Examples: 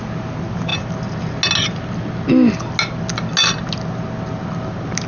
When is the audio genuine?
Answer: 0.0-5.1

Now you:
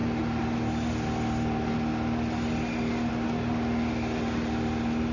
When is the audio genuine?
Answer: 0.0-5.1

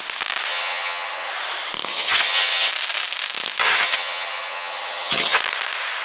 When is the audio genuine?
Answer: 0.0-0.5; 1.3-1.9; 2.7-3.6; 5.4-6.0